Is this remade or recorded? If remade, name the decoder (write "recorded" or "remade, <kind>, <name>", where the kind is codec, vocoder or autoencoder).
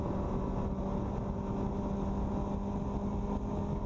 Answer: recorded